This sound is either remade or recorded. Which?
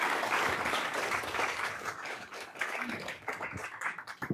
remade